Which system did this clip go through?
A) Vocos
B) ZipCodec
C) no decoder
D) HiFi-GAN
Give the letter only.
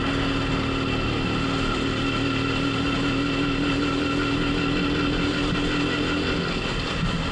C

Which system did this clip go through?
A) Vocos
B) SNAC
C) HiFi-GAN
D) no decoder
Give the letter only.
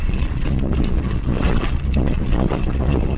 A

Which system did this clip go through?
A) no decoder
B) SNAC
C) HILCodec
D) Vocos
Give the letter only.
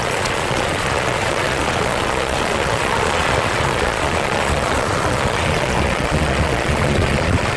D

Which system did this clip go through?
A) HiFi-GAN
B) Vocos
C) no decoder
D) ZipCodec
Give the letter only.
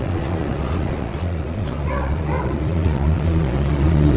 B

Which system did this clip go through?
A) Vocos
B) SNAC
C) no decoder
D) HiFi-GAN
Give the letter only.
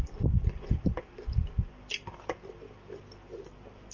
C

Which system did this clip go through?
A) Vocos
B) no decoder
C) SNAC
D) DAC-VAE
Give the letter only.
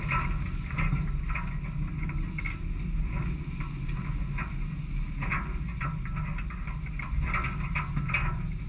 B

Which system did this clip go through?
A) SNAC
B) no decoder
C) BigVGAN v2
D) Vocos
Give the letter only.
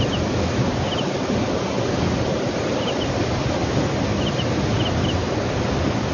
B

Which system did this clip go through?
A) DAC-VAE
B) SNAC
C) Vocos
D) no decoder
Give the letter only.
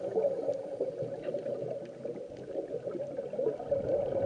D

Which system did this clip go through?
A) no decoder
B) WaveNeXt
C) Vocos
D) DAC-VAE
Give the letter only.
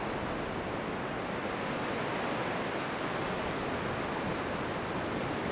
A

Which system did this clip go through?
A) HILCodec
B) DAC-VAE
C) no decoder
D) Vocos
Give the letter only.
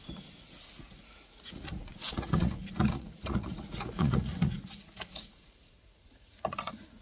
D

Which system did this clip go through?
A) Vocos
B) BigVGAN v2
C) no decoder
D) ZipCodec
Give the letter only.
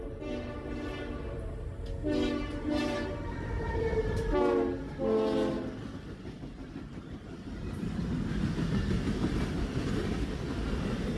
C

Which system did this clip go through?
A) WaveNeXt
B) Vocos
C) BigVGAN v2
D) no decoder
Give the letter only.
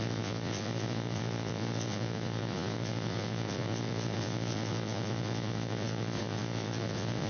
B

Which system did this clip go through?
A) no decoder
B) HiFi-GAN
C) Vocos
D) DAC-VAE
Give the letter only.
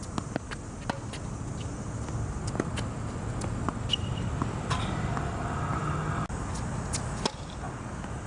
A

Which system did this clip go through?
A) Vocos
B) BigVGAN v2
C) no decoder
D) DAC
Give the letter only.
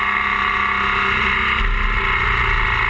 C